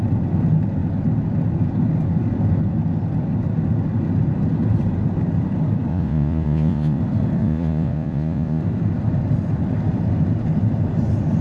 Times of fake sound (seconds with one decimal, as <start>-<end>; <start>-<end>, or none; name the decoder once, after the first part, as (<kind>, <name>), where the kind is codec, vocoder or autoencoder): 5.9-7.0 (vocoder, Vocos); 7.4-8.6

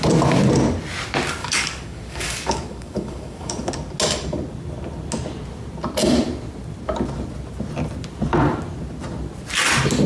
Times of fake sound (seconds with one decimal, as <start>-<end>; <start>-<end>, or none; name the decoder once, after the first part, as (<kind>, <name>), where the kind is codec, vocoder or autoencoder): 1.4-3.7 (codec, DAC)

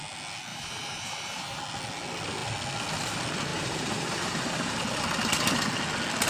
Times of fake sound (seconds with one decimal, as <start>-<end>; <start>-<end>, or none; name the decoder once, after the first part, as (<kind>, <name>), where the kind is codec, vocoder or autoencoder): 0.5-1.6 (vocoder, BigVGAN v2); 3.5-4.8

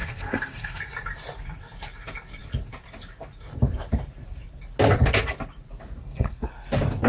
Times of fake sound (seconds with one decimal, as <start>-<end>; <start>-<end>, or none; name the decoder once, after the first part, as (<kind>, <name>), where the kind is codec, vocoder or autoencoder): 0.0-0.8 (codec, SNAC); 6.0-6.5

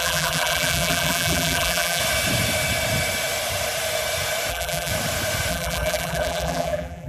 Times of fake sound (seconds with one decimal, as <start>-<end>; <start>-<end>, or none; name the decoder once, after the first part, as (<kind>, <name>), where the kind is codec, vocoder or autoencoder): 0.0-2.0 (vocoder, BigVGAN v2); 4.5-4.9; 5.5-7.1

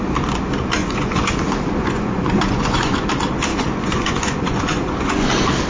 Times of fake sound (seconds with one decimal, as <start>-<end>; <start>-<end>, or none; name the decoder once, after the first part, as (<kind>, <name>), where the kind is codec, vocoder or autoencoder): 0.8-1.3 (vocoder, Vocos); 1.8-3.1; 3.5-5.3